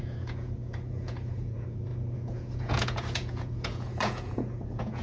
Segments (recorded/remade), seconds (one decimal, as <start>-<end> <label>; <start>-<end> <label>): 0.0-5.0 remade

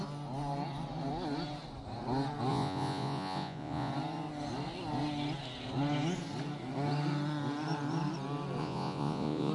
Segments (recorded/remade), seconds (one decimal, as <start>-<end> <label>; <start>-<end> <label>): 0.0-2.5 recorded; 2.5-3.9 remade; 3.9-8.6 recorded; 8.6-9.5 remade

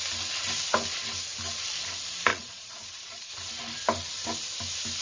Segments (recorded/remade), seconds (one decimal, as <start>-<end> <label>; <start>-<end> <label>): 0.0-2.3 recorded; 2.3-3.3 remade; 3.3-5.0 recorded

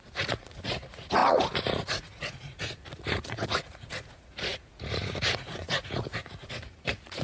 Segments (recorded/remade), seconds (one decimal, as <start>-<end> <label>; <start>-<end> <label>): 0.0-7.2 remade

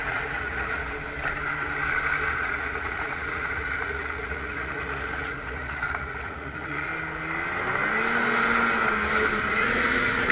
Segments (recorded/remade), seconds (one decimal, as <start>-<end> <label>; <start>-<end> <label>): 0.0-0.8 remade; 0.8-2.3 recorded; 2.3-6.9 remade; 6.9-9.5 recorded; 9.5-10.3 remade

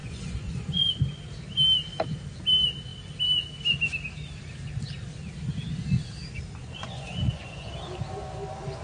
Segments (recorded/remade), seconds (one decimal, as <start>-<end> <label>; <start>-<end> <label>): 0.0-0.9 remade; 0.9-6.6 recorded; 6.6-7.7 remade; 7.7-8.8 recorded

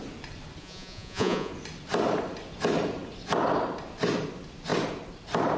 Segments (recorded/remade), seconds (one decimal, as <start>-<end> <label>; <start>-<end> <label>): 0.0-0.6 recorded; 0.6-1.5 remade; 1.5-5.6 recorded